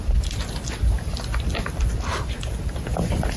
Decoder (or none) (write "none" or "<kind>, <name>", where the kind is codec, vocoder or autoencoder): none